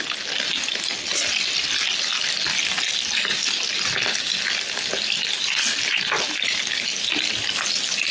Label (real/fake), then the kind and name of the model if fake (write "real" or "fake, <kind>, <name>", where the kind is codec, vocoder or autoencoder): real